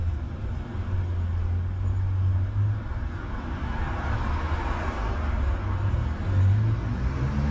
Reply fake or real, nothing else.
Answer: real